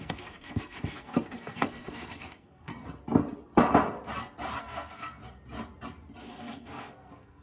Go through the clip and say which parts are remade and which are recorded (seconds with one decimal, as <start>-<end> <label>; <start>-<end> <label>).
0.0-2.7 remade; 2.7-4.6 recorded; 4.6-5.2 remade; 5.2-6.2 recorded; 6.2-7.4 remade